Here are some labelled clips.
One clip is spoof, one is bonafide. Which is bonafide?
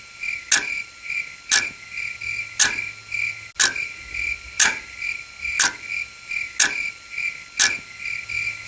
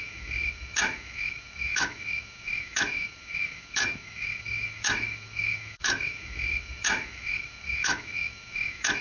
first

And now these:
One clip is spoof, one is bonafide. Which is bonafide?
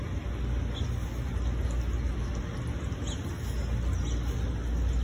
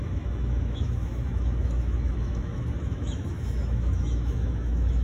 first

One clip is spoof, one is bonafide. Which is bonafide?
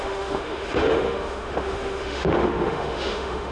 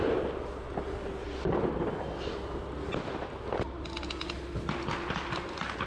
second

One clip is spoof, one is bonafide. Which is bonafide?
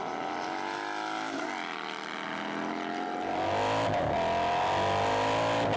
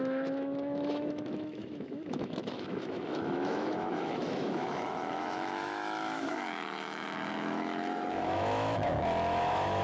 first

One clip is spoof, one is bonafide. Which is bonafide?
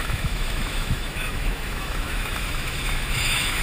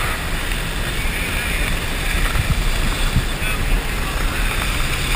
second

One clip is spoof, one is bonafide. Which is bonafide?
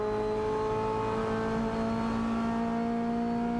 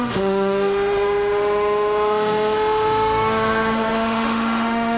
first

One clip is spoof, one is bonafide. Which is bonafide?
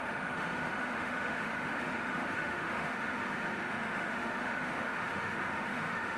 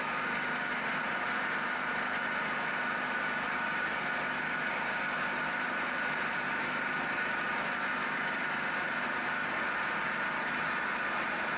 second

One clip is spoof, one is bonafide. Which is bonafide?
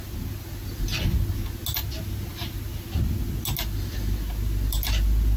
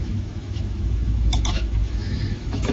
first